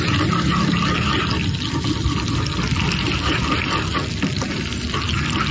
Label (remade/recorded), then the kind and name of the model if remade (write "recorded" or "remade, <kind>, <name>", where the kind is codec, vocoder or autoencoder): recorded